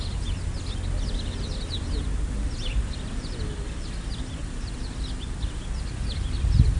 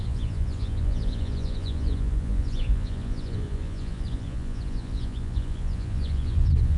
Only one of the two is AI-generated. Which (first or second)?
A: second